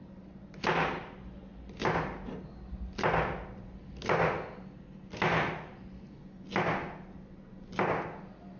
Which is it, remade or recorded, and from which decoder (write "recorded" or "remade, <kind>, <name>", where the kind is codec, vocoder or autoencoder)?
recorded